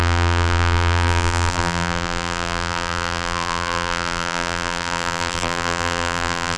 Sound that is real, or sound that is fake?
fake